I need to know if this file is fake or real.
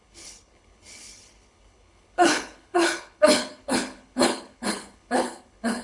fake